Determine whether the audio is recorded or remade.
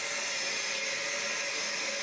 recorded